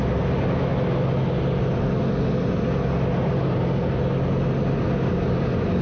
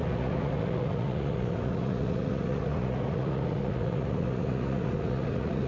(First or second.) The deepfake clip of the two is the second